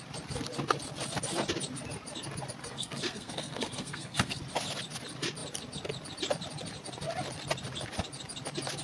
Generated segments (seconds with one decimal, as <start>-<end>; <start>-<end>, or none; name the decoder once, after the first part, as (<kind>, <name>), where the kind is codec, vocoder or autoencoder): 2.6-4.4 (codec, SNAC)